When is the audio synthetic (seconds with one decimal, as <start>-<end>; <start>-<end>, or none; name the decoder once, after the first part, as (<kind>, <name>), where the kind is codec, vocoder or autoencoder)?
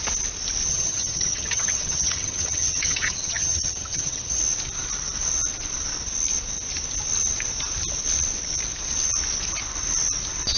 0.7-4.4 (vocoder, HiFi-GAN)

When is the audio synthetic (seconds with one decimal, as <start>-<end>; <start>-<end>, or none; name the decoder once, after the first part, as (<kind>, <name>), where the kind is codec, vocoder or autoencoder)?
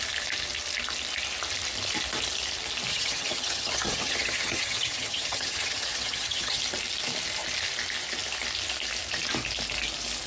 2.9-6.6 (vocoder, HiFi-GAN)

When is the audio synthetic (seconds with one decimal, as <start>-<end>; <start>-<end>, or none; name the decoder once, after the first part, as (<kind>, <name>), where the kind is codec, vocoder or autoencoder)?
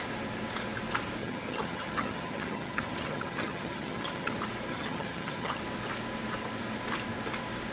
1.2-4.3 (vocoder, HiFi-GAN); 4.7-5.6